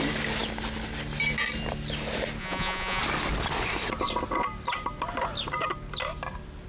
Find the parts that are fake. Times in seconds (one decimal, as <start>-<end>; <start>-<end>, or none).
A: 2.4-3.0